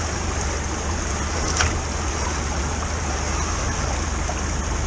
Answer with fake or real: real